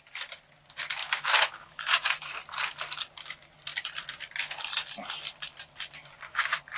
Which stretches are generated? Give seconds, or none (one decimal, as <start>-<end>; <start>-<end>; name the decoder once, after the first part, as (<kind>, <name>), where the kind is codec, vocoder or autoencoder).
1.0-2.4 (autoencoder, DAC-VAE)